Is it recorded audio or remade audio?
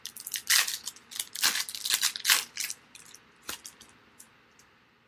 recorded